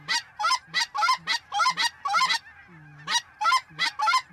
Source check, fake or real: real